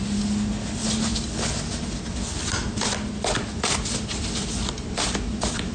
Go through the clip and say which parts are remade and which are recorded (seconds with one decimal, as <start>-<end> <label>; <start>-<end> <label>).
0.0-5.7 recorded